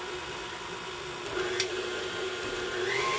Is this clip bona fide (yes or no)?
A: yes